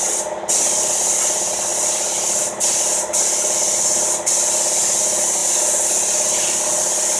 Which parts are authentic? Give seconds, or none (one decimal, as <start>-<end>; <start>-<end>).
0.0-7.2